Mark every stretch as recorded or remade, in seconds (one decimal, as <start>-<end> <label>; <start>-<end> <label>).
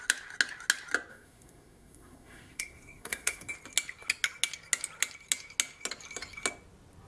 0.0-1.1 recorded; 1.1-3.5 remade; 3.5-7.1 recorded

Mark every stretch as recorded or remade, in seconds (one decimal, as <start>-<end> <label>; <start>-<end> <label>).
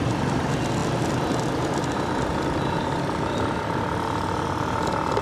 0.0-5.2 recorded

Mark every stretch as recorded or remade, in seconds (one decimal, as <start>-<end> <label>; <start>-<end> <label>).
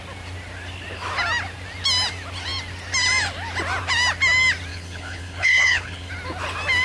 0.0-4.7 recorded; 4.7-6.1 remade; 6.1-6.8 recorded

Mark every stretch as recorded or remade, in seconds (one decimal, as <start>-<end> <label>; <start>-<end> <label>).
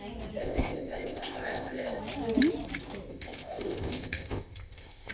0.0-0.4 recorded; 0.4-2.0 remade; 2.0-3.1 recorded; 3.1-5.1 remade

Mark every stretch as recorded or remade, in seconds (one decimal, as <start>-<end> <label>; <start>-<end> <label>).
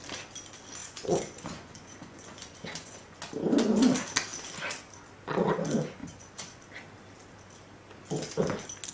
0.0-0.8 recorded; 0.8-3.2 remade; 3.2-6.0 recorded; 6.0-6.6 remade; 6.6-8.9 recorded